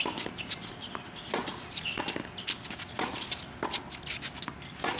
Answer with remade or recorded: recorded